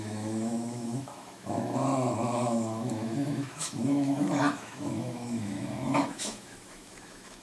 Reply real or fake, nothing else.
fake